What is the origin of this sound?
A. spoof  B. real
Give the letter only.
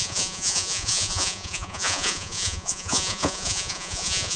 A